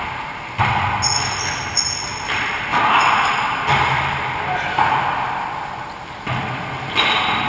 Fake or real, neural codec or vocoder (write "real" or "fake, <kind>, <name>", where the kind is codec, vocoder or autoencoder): real